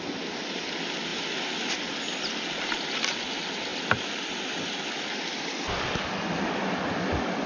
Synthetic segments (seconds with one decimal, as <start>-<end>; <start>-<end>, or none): 1.1-1.7; 3.7-6.0